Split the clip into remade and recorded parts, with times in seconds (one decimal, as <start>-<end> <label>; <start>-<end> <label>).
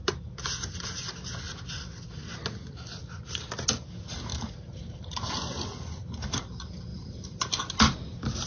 0.0-4.3 recorded; 4.3-5.3 remade; 5.3-6.9 recorded; 6.9-7.4 remade; 7.4-8.5 recorded